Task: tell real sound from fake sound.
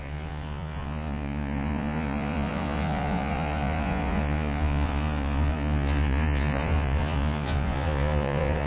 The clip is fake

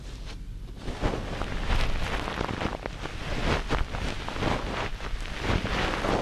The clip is real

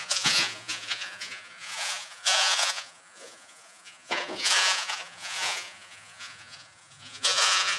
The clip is fake